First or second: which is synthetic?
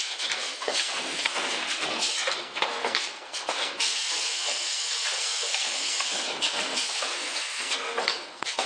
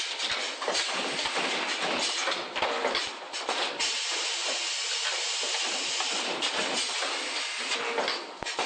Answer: first